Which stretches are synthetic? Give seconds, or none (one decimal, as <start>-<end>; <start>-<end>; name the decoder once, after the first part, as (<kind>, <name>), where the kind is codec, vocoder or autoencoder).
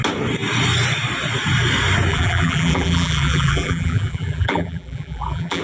2.1-5.6 (vocoder, BigVGAN v2)